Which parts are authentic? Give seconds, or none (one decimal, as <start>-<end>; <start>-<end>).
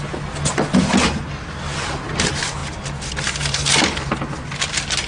0.0-5.1